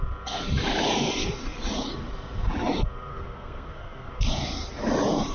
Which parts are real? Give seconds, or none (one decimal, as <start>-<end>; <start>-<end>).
0.0-3.1; 4.1-5.3